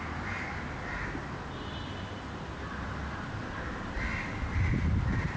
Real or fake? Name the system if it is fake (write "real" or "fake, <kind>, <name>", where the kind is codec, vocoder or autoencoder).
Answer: real